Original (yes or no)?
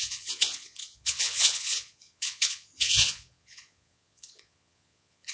no